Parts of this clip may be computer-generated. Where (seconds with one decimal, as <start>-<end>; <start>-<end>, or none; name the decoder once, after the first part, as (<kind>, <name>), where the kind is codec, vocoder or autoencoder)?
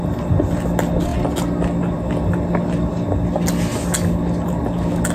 none